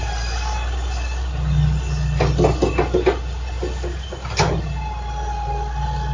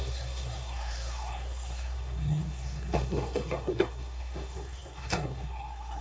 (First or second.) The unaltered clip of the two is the first